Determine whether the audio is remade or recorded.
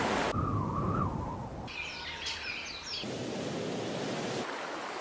recorded